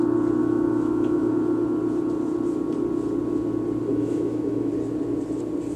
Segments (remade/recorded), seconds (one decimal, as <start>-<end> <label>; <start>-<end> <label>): 0.0-0.4 recorded; 0.4-1.3 remade; 1.3-3.9 recorded; 3.9-4.7 remade; 4.7-5.8 recorded